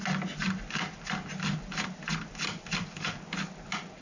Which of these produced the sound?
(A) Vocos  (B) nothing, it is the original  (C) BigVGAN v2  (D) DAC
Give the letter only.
B